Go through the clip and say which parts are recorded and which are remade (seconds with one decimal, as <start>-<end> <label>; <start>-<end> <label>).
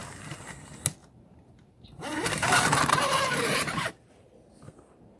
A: 0.0-0.5 remade; 0.5-1.0 recorded; 1.0-3.9 remade; 3.9-5.2 recorded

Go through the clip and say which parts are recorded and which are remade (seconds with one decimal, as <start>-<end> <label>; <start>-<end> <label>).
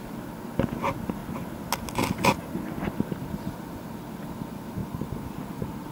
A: 0.0-5.9 recorded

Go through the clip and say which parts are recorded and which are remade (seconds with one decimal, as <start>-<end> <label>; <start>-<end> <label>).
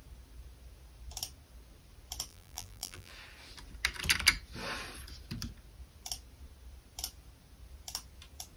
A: 0.0-2.3 recorded; 2.3-3.1 remade; 3.1-8.6 recorded